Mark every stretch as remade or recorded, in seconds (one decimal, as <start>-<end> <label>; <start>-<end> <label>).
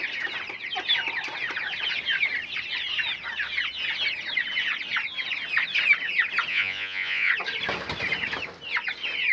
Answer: 0.0-6.5 recorded; 6.5-7.3 remade; 7.3-9.3 recorded